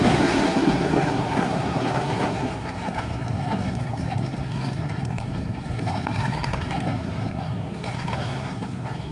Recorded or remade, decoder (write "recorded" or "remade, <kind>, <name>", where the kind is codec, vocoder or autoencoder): remade, codec, SNAC